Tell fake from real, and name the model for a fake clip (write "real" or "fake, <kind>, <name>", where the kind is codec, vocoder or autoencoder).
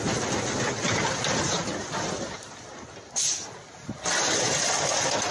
real